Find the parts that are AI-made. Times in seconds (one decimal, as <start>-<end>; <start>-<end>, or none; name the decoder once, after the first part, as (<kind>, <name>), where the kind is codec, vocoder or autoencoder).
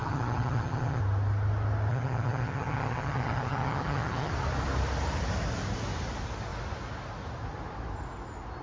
0.0-1.0 (vocoder, HiFi-GAN); 1.9-4.3